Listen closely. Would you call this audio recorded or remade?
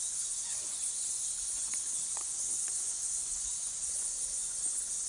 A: remade